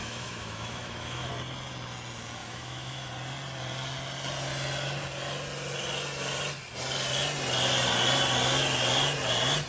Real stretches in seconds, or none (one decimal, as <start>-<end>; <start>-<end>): 1.3-2.4; 3.1-9.7